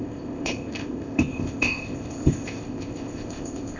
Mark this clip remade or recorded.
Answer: remade